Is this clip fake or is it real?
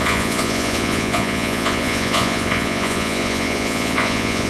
fake